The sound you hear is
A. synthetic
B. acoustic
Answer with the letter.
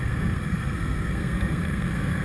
A